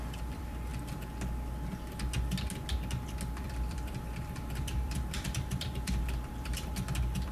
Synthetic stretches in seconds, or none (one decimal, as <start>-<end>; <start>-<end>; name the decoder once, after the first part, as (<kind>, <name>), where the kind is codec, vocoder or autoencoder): 0.0-0.7 (vocoder, BigVGAN v2); 3.4-7.3